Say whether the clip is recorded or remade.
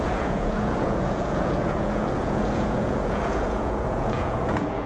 remade